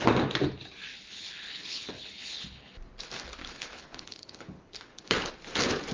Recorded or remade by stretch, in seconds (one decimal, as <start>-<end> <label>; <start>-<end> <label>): 0.0-0.9 recorded; 0.9-2.8 remade; 2.8-3.4 recorded; 3.4-5.3 remade; 5.3-5.9 recorded